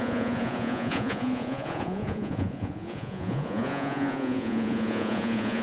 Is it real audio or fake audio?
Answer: fake